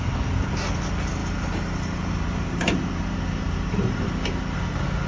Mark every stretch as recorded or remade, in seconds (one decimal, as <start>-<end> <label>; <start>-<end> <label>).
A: 0.0-1.2 recorded; 1.2-4.1 remade; 4.1-5.1 recorded